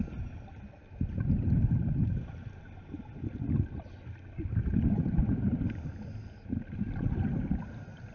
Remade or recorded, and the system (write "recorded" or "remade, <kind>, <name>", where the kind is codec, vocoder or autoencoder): recorded